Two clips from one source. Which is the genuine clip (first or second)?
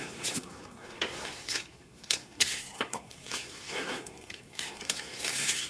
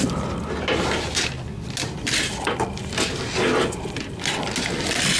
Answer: second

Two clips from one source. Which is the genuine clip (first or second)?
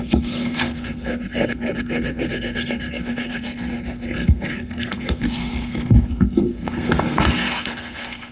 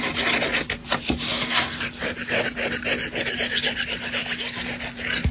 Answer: second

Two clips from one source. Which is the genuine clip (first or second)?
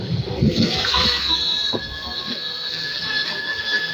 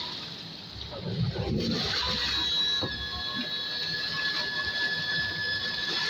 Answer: second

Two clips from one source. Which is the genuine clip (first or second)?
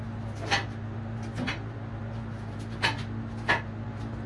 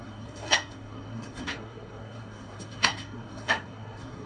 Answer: first